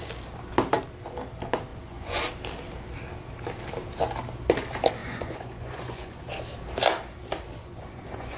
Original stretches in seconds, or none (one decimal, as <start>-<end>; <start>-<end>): 0.0-1.7; 2.2-5.0; 6.4-7.6